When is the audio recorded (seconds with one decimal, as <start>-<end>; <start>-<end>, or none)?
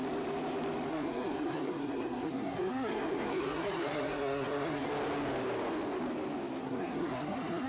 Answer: 0.0-0.9; 4.9-6.6